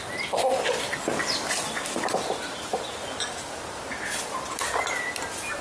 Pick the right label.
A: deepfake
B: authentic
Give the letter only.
B